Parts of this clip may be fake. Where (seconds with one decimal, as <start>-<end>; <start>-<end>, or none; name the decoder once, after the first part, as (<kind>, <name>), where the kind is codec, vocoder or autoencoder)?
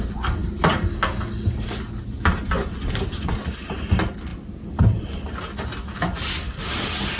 none